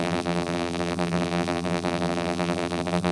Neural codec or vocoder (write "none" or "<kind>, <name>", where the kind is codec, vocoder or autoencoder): vocoder, BigVGAN v2